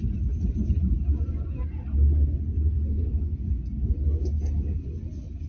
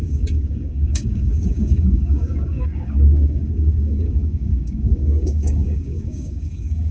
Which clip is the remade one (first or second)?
second